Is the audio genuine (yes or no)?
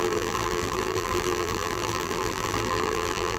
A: no